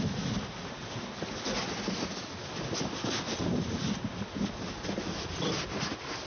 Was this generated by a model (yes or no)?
no